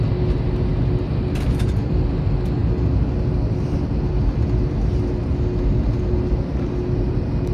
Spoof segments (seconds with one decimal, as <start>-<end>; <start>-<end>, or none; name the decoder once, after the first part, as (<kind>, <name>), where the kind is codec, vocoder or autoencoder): none

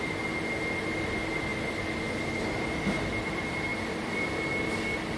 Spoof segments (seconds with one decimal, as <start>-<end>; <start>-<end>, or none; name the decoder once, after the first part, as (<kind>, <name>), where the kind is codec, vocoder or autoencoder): 3.7-4.3 (vocoder, BigVGAN v2)

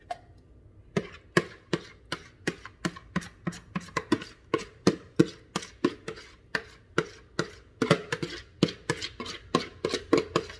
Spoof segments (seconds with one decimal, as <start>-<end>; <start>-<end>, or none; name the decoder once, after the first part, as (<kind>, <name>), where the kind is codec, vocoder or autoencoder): 4.5-5.2 (vocoder, BigVGAN v2)

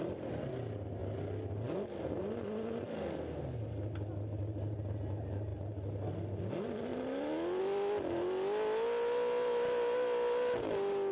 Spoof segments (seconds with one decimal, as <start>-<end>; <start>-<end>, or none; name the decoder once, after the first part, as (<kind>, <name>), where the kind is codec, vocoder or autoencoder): none